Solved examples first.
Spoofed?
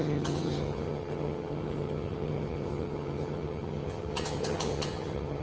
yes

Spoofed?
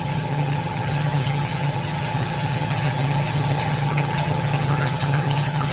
yes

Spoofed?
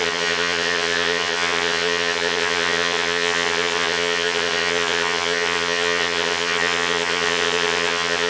yes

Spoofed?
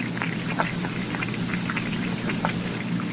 no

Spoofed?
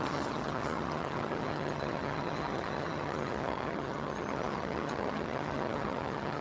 yes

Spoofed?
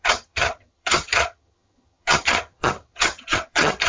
yes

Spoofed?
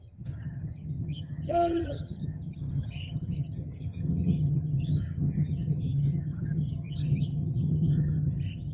yes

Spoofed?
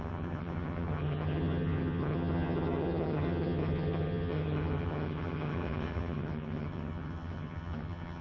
yes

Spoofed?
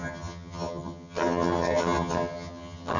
yes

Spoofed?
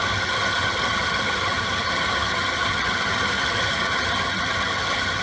yes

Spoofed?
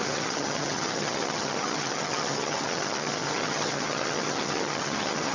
yes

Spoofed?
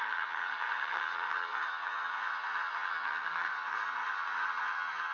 yes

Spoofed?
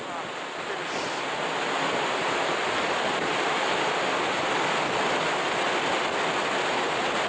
no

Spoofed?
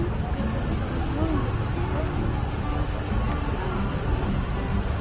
no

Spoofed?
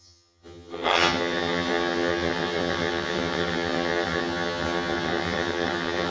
yes